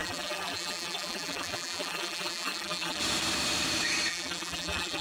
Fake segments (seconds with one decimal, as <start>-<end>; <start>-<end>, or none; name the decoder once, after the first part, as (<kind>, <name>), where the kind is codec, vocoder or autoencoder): 0.0-3.0 (vocoder, BigVGAN v2); 4.1-5.0